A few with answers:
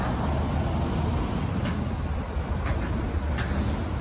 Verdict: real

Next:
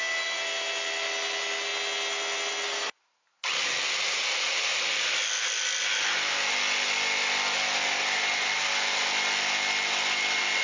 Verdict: real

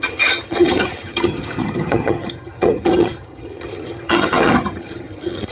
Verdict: fake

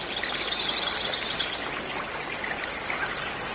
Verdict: real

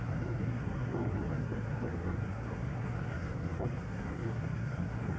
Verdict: fake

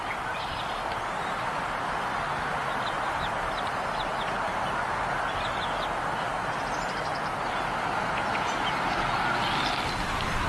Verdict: real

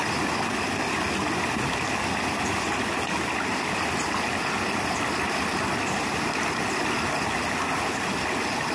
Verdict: real